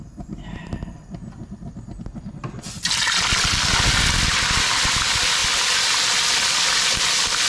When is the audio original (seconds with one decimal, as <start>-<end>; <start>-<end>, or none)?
0.0-7.5